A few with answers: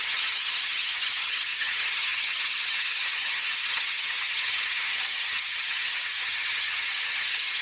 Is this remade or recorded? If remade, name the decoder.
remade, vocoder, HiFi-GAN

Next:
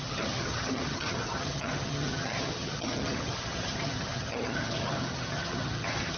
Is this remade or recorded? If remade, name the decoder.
remade, vocoder, HiFi-GAN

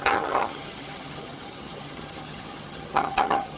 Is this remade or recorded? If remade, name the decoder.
remade, vocoder, HiFi-GAN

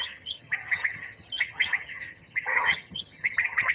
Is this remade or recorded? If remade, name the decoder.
remade, vocoder, HiFi-GAN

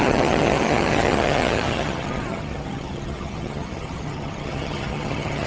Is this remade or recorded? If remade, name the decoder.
remade, vocoder, HiFi-GAN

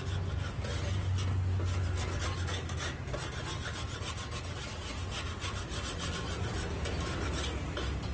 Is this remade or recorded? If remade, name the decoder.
recorded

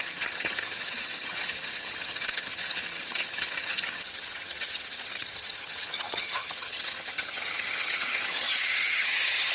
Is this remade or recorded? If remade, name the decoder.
remade, vocoder, HiFi-GAN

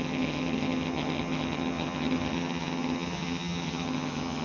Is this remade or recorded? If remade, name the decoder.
remade, vocoder, HiFi-GAN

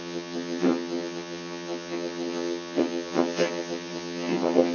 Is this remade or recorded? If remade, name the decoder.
remade, vocoder, HiFi-GAN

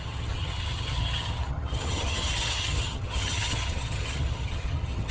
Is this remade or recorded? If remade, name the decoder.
remade, vocoder, HiFi-GAN